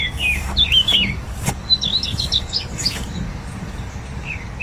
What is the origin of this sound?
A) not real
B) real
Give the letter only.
A